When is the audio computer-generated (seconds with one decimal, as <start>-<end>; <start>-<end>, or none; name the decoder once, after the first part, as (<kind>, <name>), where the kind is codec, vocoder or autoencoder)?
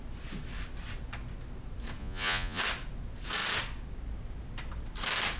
2.0-2.6 (vocoder, Vocos)